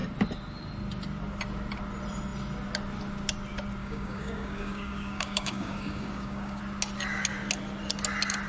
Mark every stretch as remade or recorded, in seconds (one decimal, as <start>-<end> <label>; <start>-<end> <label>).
0.0-3.8 recorded; 3.8-6.6 remade; 6.6-8.5 recorded